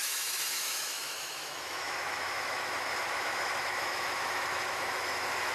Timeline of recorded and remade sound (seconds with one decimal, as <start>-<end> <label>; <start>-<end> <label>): 0.0-5.5 remade